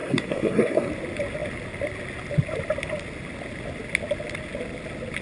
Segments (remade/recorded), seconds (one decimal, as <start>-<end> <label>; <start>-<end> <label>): 0.0-0.9 remade; 0.9-5.2 recorded